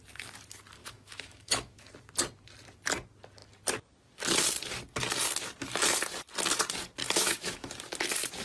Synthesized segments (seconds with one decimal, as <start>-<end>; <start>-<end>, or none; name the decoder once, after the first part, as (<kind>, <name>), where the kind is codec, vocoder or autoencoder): 0.8-1.9 (autoencoder, DAC-VAE); 7.0-7.7